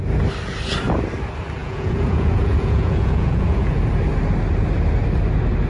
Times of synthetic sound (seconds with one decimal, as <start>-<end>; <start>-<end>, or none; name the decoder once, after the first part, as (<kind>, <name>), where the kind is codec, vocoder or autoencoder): 1.6-3.8 (vocoder, Vocos)